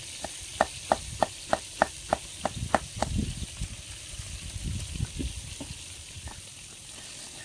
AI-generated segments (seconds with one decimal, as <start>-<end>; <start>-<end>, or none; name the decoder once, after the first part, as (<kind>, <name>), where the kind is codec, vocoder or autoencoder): none